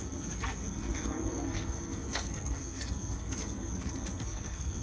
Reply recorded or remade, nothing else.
remade